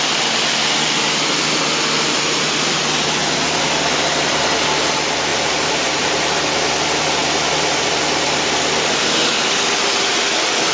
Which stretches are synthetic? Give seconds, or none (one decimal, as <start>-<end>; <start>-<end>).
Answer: 5.3-6.1